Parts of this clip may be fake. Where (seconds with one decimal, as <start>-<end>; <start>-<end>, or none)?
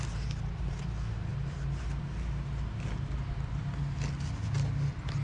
none